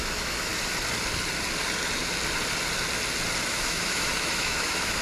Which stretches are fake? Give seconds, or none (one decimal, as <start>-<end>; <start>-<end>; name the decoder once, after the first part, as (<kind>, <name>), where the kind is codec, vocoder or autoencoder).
0.0-0.5 (autoencoder, DAC-VAE); 3.5-5.0

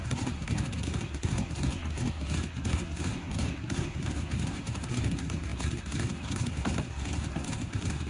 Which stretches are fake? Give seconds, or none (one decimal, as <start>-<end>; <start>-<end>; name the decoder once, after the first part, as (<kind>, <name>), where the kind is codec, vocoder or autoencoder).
0.0-8.1 (codec, SNAC)

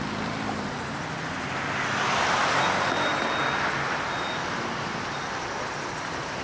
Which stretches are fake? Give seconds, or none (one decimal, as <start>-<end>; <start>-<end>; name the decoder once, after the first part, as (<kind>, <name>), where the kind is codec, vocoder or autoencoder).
none

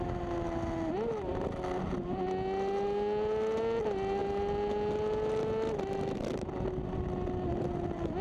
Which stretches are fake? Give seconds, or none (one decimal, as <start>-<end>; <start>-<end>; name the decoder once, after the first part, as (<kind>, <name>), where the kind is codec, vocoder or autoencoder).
none

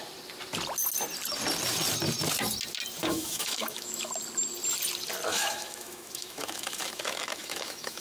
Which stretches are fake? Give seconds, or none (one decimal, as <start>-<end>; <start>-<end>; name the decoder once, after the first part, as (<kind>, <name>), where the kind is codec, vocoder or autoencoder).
3.0-4.1 (autoencoder, DAC-VAE); 5.3-8.0

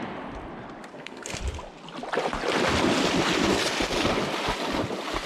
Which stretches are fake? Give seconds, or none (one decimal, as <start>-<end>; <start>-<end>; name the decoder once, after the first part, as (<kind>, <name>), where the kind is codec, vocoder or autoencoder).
0.9-1.4 (codec, SNAC)

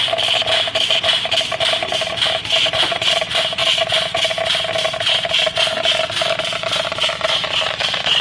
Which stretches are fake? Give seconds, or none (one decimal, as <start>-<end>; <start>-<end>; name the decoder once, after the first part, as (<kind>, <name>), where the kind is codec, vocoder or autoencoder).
0.0-0.4 (vocoder, BigVGAN v2); 2.1-3.6; 5.5-8.2